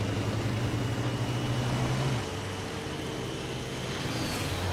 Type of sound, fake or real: real